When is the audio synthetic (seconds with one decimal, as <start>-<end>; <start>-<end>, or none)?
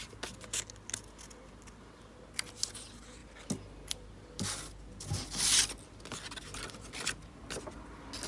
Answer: none